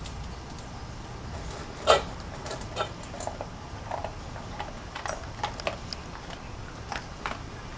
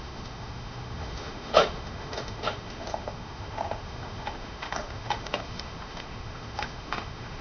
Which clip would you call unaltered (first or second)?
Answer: first